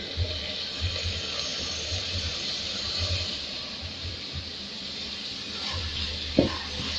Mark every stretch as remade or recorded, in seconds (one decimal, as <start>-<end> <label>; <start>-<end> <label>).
0.0-1.5 recorded; 1.5-4.1 remade; 4.1-7.0 recorded